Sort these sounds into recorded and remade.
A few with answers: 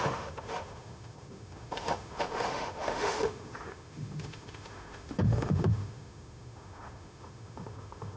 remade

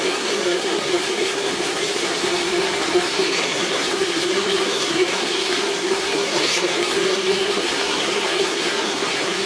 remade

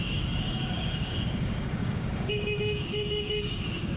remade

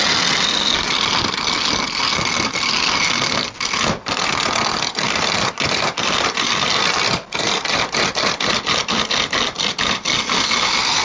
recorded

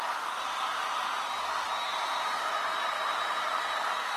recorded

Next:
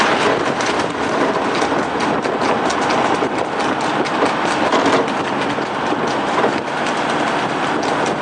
recorded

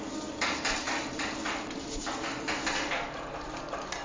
recorded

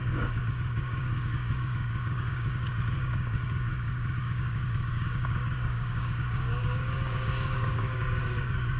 remade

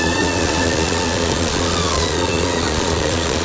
remade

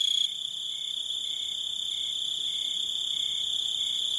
recorded